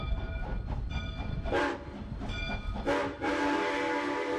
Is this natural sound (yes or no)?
yes